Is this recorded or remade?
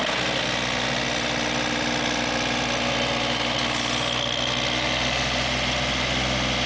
recorded